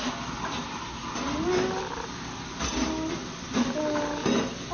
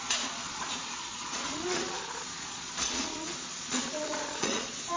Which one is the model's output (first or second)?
second